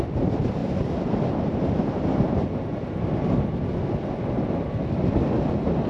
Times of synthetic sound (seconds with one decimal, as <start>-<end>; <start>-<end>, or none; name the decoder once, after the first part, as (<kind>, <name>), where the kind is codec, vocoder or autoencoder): none